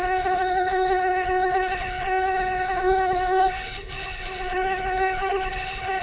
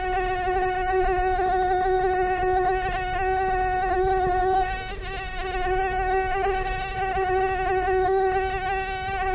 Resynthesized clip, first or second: first